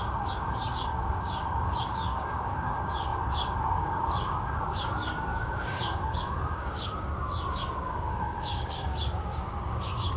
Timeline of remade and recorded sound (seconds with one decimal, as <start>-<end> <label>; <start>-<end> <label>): 0.0-10.2 remade